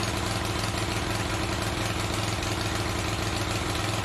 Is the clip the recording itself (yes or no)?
yes